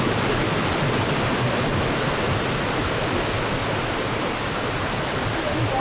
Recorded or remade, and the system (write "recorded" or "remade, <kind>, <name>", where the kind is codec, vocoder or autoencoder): recorded